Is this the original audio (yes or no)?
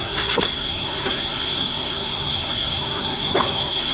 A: no